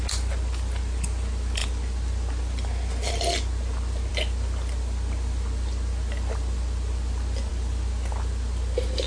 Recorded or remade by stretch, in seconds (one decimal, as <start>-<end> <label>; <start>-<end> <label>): 0.0-9.1 recorded